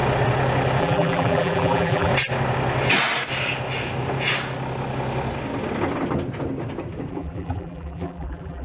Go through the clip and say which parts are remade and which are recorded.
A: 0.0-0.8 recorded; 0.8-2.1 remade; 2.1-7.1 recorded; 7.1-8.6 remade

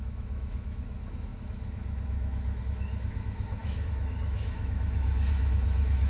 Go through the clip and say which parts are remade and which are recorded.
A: 0.0-6.1 remade

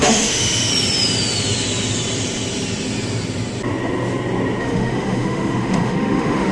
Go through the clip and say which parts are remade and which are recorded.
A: 0.0-0.7 remade; 0.7-4.6 recorded; 4.6-6.5 remade

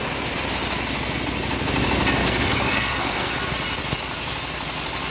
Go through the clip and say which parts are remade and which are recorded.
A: 0.0-2.2 recorded; 2.2-3.3 remade; 3.3-5.1 recorded

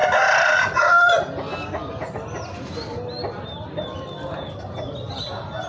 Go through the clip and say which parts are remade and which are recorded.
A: 0.0-5.7 recorded

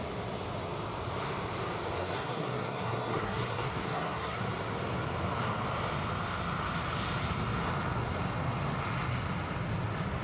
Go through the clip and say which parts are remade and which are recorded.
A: 0.0-2.0 recorded; 2.0-4.4 remade; 4.4-10.2 recorded

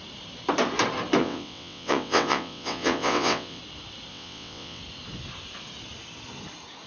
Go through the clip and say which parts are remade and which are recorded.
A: 0.0-1.2 recorded; 1.2-3.6 remade; 3.6-4.1 recorded; 4.1-4.8 remade; 4.8-6.9 recorded

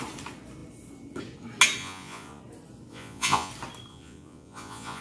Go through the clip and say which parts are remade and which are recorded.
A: 0.0-1.8 recorded; 1.8-2.4 remade; 2.4-2.9 recorded; 2.9-3.5 remade; 3.5-3.9 recorded; 3.9-5.0 remade